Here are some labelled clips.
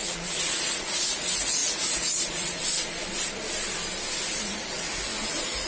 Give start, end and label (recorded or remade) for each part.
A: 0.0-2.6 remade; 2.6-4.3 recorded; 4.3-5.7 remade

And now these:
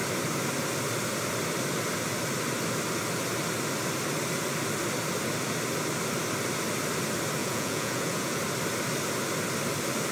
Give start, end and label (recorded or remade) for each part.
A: 0.0-7.4 recorded; 7.4-8.4 remade; 8.4-10.1 recorded

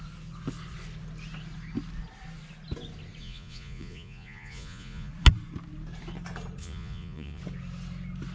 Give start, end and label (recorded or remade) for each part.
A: 0.0-3.2 recorded; 3.2-5.1 remade; 5.1-6.6 recorded; 6.6-7.4 remade; 7.4-8.3 recorded

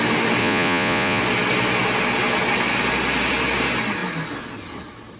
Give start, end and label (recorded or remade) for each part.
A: 0.0-0.4 recorded; 0.4-1.2 remade; 1.2-5.2 recorded

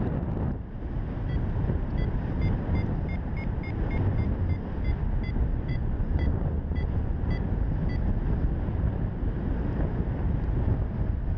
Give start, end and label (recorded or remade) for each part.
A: 0.0-5.5 recorded; 5.5-7.2 remade; 7.2-11.4 recorded

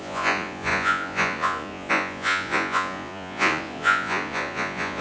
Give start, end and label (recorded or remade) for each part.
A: 0.0-5.0 remade